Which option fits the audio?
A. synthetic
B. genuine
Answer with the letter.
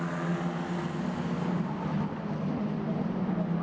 B